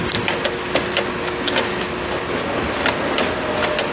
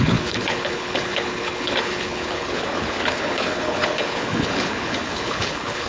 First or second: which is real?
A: first